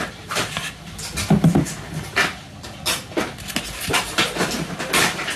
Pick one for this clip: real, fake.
real